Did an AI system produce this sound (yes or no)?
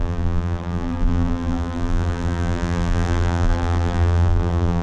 yes